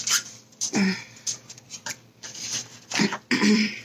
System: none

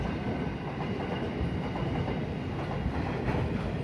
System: none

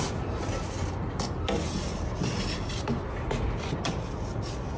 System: none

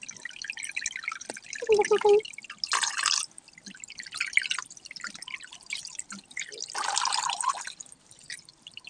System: none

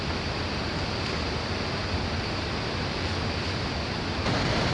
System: none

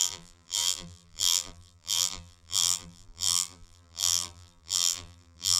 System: vocoder, BigVGAN v2